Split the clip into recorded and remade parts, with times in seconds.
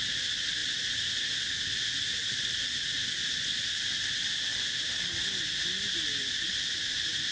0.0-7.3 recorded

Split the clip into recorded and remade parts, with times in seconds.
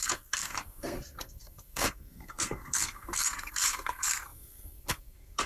0.0-5.5 remade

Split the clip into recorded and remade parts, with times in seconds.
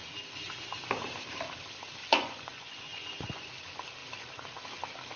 0.0-2.0 recorded; 2.0-3.5 remade; 3.5-5.2 recorded